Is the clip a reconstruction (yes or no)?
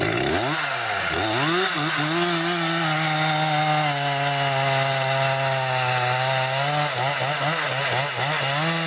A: no